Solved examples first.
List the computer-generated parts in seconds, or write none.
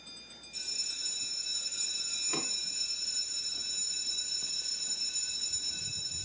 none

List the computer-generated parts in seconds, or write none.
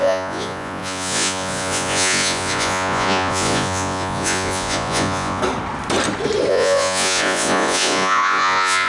0.0-5.4 (vocoder, Vocos); 6.5-8.9